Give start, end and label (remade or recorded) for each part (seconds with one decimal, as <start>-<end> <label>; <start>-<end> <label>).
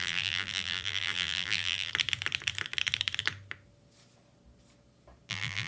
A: 0.0-1.9 remade; 1.9-5.3 recorded; 5.3-5.7 remade